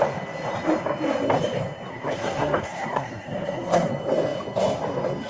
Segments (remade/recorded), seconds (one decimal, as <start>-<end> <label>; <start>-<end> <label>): 0.0-1.9 recorded; 1.9-3.9 remade; 3.9-5.3 recorded